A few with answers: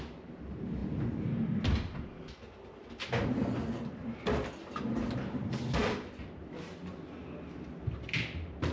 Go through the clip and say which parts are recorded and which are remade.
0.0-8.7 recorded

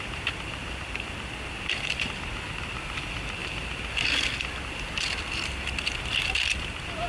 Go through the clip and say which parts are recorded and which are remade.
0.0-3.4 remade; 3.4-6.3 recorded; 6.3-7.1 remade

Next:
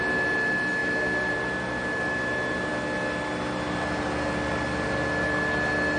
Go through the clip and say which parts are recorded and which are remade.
0.0-6.0 recorded

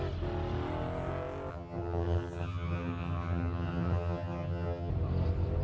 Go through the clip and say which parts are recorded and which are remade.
0.0-1.5 recorded; 1.5-4.9 remade; 4.9-5.6 recorded